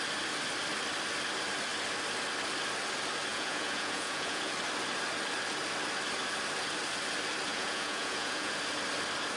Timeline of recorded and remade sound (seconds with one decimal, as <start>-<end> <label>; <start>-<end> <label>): 0.0-3.3 recorded; 3.3-4.5 remade; 4.5-7.5 recorded; 7.5-8.5 remade; 8.5-9.4 recorded